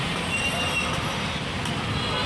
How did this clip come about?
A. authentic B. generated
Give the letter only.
A